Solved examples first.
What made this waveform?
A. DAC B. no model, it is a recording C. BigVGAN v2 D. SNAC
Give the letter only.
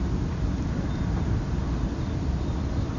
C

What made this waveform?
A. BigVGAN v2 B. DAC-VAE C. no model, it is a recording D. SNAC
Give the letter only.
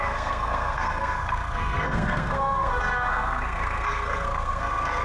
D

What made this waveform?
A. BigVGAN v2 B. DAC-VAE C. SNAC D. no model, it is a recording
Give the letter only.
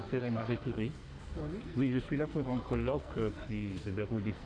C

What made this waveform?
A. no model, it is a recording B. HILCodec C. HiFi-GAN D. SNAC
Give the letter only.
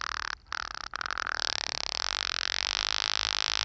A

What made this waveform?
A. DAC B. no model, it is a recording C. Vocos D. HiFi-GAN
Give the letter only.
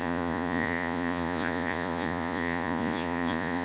C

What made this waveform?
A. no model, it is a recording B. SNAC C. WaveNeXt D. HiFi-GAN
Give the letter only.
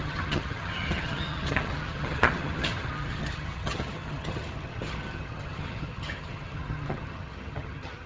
D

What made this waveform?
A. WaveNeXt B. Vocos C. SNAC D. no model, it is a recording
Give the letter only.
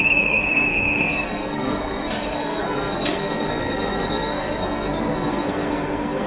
C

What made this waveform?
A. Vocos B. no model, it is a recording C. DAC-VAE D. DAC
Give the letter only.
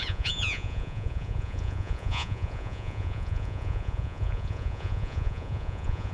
A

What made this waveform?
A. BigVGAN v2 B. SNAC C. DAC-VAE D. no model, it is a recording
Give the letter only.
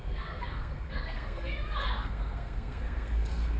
B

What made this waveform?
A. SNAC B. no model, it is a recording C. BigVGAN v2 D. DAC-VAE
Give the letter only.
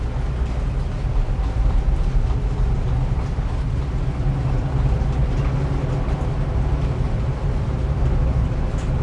B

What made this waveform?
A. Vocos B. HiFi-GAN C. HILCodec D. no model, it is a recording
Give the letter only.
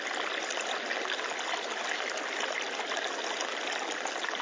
D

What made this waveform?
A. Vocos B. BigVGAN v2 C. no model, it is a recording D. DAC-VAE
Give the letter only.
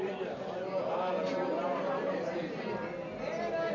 C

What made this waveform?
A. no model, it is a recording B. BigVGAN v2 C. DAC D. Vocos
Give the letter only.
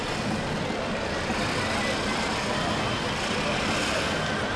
A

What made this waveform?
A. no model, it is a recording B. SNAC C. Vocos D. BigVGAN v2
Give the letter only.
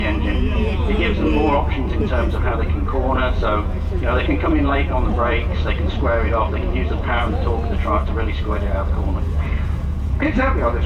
C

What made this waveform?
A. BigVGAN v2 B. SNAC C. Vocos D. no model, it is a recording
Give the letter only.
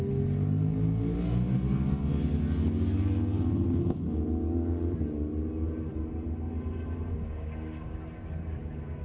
D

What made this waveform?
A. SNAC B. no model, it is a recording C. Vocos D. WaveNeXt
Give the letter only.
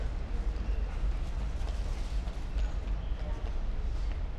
B